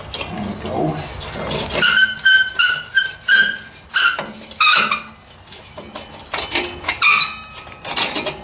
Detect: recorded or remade recorded